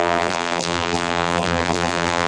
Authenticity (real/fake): fake